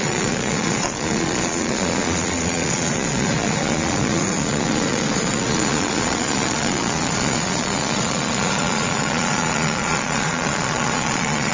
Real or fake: fake